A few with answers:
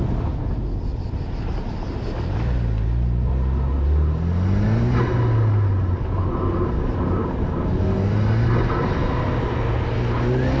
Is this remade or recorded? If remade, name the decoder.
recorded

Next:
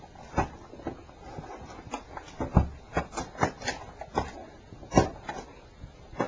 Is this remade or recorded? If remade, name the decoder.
recorded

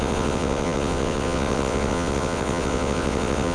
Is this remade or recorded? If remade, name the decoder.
remade, vocoder, WaveNeXt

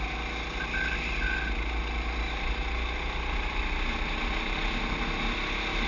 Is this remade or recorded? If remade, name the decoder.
recorded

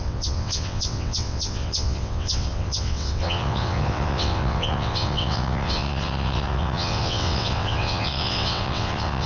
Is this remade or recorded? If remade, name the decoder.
remade, vocoder, WaveNeXt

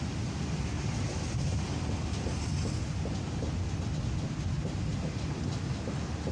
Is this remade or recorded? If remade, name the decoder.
recorded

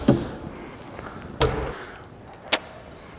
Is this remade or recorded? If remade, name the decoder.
recorded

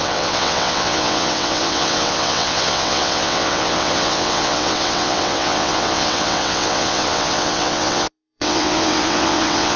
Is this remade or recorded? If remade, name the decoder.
remade, vocoder, WaveNeXt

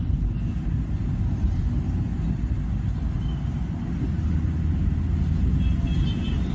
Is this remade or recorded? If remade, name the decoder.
recorded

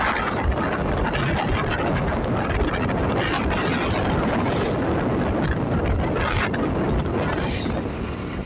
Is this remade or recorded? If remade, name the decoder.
recorded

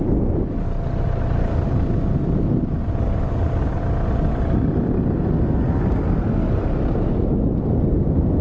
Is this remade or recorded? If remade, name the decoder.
recorded